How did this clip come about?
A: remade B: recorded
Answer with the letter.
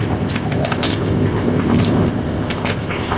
A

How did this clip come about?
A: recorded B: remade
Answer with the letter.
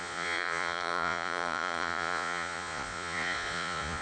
B